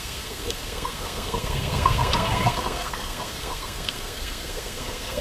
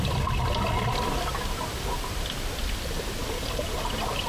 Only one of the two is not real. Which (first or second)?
first